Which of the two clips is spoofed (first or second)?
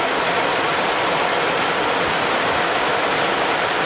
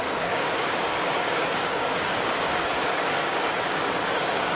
second